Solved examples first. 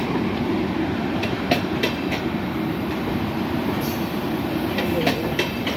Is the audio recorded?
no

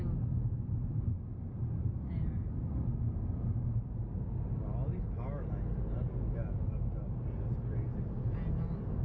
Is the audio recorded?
yes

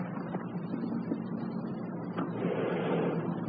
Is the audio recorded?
yes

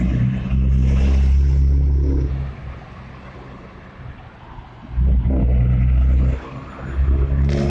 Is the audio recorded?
yes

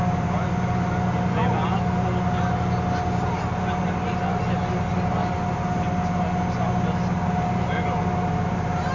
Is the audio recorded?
yes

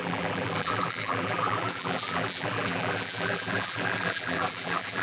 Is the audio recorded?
no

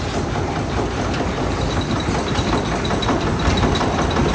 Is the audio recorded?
yes